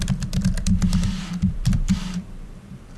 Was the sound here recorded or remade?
remade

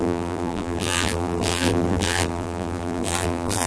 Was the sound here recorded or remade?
remade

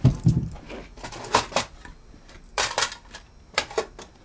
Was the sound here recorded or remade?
remade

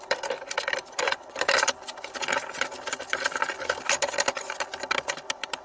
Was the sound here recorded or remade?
remade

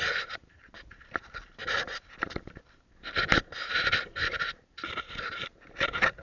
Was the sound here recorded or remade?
remade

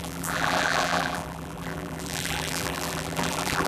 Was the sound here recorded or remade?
remade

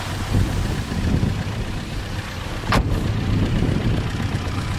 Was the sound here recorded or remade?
remade